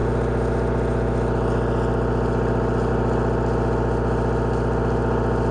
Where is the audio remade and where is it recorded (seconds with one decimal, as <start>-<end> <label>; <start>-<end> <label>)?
0.0-5.5 recorded